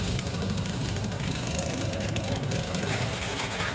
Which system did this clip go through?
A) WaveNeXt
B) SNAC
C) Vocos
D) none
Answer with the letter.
B